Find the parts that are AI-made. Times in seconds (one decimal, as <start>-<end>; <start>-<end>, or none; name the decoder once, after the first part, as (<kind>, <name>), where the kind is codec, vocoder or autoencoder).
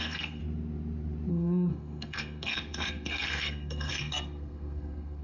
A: 0.0-0.4 (codec, SNAC); 1.3-5.2